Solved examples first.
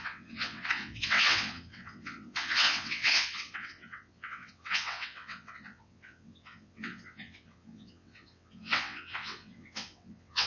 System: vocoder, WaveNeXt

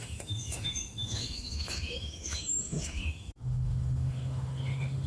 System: autoencoder, DAC-VAE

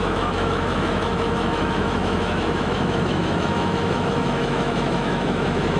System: autoencoder, DAC-VAE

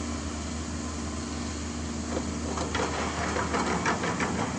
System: none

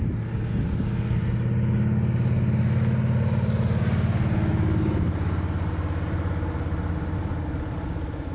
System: none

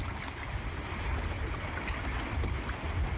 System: none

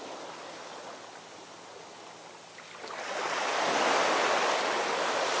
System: none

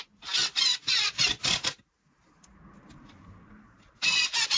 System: none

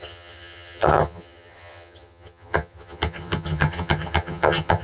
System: vocoder, HiFi-GAN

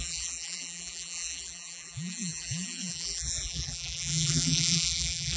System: vocoder, BigVGAN v2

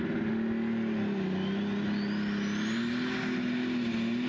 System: none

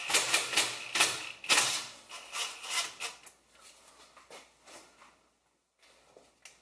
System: none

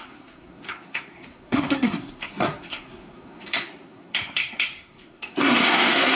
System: codec, SNAC